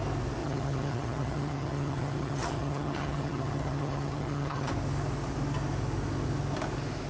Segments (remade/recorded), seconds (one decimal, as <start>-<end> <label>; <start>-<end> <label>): 0.0-0.4 recorded; 0.4-4.7 remade; 4.7-7.1 recorded